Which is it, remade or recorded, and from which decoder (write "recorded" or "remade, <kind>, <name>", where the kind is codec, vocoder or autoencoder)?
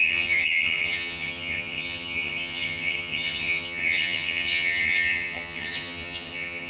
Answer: remade, vocoder, HiFi-GAN